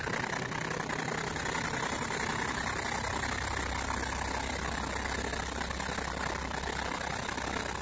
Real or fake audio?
real